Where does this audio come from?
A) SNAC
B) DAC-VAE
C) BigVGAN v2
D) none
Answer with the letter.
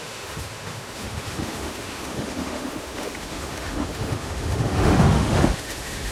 B